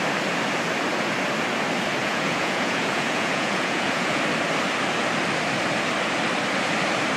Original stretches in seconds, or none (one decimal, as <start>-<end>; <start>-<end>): 0.0-2.0; 4.2-7.2